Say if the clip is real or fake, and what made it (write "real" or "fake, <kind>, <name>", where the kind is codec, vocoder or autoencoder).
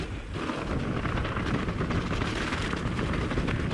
real